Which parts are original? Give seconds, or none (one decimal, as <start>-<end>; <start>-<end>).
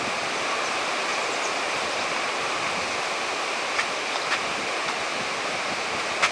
0.0-6.3